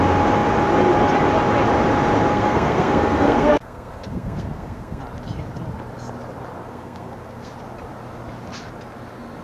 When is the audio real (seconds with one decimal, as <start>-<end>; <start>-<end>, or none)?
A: 0.0-2.3; 5.0-6.6; 7.5-9.4